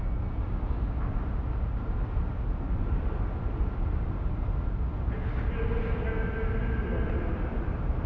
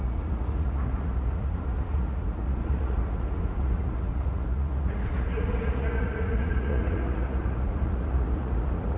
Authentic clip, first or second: first